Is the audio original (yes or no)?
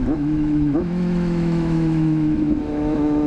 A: no